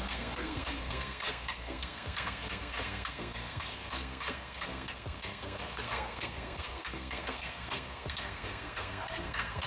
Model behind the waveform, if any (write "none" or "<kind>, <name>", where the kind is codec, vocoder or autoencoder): codec, SNAC